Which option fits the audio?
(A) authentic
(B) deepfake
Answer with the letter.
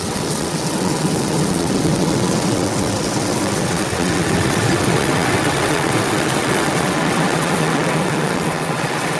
B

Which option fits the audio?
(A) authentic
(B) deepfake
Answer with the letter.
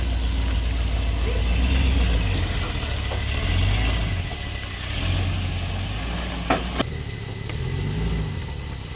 A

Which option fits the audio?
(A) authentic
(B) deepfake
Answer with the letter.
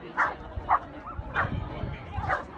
B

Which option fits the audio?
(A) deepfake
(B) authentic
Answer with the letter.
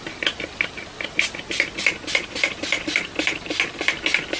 B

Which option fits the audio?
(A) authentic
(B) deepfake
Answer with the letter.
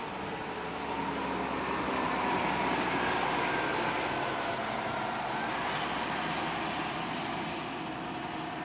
A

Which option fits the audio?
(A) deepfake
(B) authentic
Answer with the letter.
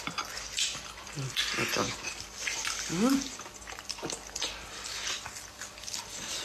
B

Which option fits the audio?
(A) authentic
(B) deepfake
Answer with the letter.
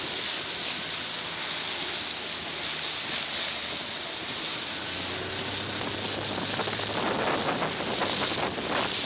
A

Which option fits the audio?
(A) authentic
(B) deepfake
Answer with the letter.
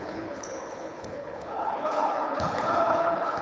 B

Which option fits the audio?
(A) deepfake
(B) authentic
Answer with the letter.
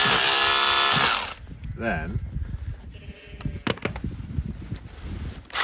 B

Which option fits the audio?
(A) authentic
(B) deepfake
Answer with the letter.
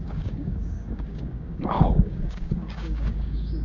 B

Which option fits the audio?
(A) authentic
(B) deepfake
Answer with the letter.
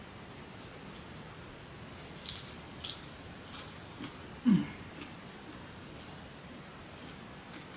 A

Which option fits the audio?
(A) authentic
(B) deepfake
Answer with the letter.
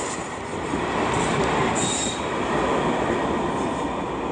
A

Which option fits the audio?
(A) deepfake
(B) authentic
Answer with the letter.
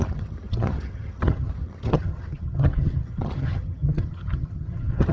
A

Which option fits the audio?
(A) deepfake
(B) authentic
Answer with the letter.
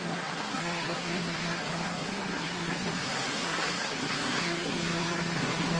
A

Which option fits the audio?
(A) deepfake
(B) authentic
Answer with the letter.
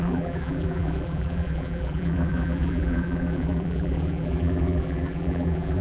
A